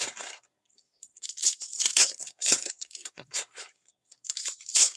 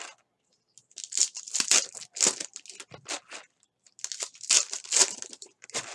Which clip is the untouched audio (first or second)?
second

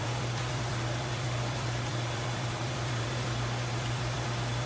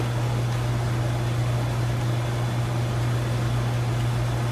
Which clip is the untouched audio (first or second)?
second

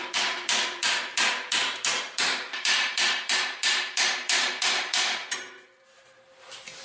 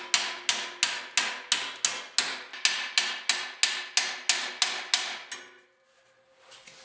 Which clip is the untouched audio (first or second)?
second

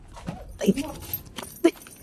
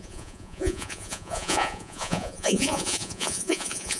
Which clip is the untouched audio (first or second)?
first